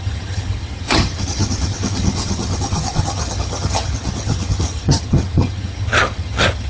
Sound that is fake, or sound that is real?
fake